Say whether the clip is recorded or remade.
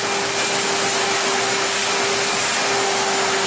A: recorded